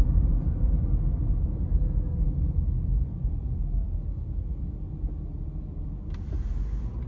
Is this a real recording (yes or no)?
yes